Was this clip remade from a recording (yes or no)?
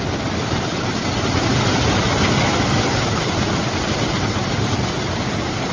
no